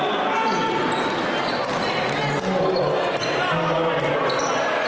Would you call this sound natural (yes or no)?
yes